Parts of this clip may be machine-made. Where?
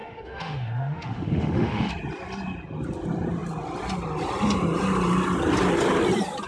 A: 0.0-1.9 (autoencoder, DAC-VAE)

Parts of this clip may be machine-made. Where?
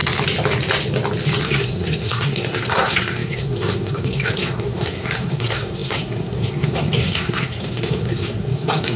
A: 1.4-9.0 (codec, SNAC)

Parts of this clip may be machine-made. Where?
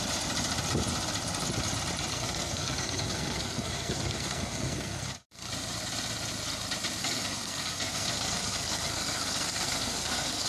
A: 2.1-5.5 (codec, SNAC); 7.0-10.5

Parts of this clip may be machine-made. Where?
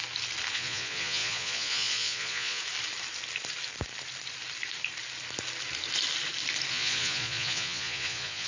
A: 0.5-2.6 (vocoder, Vocos); 6.7-8.5